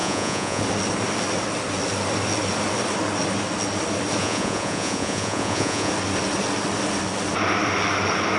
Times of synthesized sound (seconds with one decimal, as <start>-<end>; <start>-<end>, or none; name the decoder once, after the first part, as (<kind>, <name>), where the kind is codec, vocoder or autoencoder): 0.0-0.6 (vocoder, Vocos); 4.2-5.9